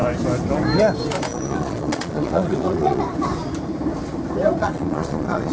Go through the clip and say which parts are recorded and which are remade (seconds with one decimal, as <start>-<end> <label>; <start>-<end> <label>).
0.0-1.3 recorded; 1.3-3.0 remade; 3.0-4.6 recorded; 4.6-5.5 remade